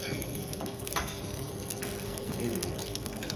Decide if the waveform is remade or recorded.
remade